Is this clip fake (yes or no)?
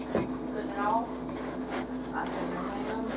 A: no